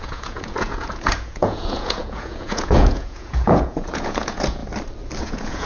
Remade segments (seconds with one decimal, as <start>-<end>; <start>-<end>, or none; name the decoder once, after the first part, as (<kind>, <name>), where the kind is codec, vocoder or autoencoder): 0.0-4.6 (vocoder, Vocos); 5.2-5.7